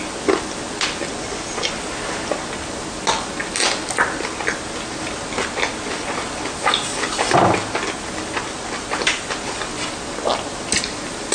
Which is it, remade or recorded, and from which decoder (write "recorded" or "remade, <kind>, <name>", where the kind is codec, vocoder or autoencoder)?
recorded